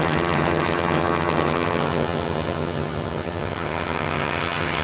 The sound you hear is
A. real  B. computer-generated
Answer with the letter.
B